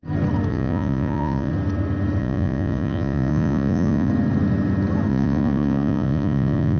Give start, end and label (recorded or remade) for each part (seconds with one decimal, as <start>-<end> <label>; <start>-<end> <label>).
0.0-0.5 recorded; 0.5-1.5 remade; 1.5-2.2 recorded; 2.2-4.1 remade; 4.1-5.1 recorded; 5.1-6.8 remade